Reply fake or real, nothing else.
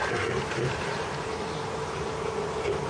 real